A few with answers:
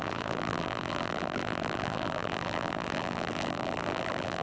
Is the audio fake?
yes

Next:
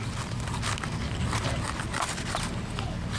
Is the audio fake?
no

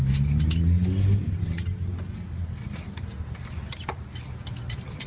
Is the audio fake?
no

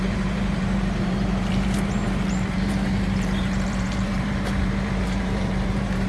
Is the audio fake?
yes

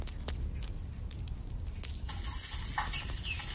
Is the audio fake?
no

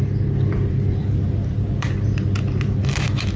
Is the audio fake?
yes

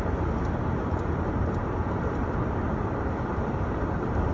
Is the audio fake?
yes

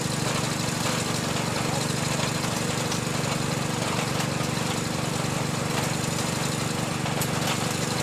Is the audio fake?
no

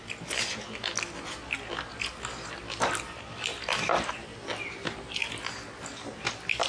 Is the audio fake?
no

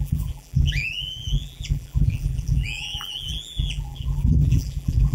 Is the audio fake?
yes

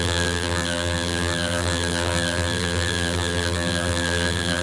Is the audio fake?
yes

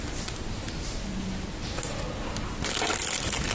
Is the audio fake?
no